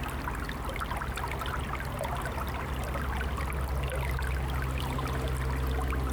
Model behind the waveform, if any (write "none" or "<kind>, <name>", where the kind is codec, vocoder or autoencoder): none